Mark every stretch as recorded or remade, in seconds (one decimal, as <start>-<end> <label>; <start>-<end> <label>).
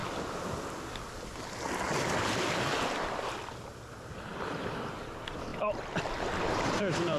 0.0-4.0 recorded; 4.0-5.5 remade; 5.5-6.4 recorded; 6.4-7.2 remade